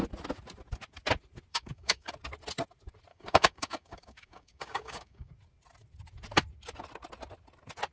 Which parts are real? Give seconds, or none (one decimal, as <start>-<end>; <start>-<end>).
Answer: 0.0-1.5; 2.1-3.1; 5.3-7.9